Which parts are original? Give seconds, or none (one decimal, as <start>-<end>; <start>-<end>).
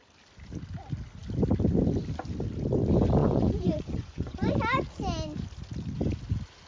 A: 0.0-3.2; 4.6-6.7